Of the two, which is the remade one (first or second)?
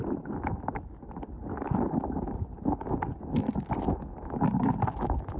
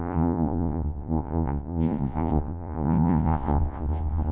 second